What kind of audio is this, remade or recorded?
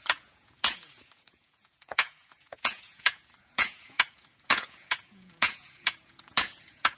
remade